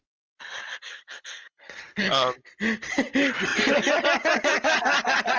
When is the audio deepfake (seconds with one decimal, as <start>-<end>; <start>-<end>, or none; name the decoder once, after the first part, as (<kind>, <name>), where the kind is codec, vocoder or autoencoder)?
0.9-2.0 (codec, HILCodec)